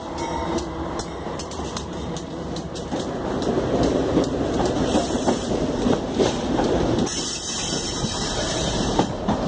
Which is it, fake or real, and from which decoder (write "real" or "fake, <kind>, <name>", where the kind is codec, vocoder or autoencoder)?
fake, vocoder, BigVGAN v2